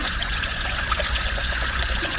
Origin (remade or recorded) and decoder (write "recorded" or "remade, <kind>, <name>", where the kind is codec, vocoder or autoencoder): remade, vocoder, Vocos